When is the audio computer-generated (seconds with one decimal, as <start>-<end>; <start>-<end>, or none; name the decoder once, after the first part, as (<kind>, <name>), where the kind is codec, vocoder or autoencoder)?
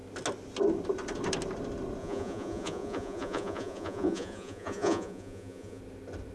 2.0-5.8 (vocoder, Vocos)